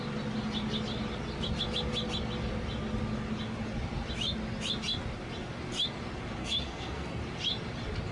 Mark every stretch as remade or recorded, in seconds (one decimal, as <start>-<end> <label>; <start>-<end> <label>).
0.0-6.4 recorded; 6.4-7.2 remade; 7.2-8.1 recorded